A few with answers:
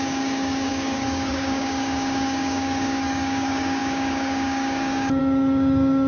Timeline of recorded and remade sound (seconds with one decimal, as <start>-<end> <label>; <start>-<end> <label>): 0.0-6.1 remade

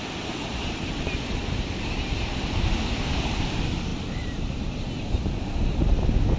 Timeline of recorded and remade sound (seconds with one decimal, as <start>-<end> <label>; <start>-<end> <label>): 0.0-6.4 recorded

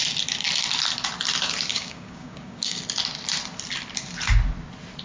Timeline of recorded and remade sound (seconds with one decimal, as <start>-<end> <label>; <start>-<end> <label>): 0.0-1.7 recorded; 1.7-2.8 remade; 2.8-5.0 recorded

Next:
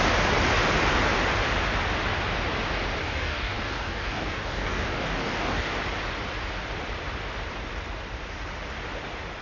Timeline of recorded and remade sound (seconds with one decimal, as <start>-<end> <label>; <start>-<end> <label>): 0.0-3.0 recorded; 3.0-5.7 remade; 5.7-9.4 recorded

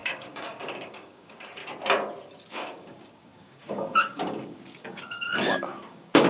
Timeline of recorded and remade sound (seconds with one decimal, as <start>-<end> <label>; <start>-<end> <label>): 0.0-1.6 remade; 1.6-2.5 recorded; 2.5-6.3 remade

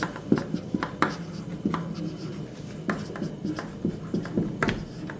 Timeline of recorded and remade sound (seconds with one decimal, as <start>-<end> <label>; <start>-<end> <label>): 0.0-5.2 recorded